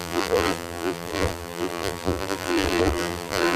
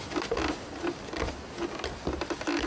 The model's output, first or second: first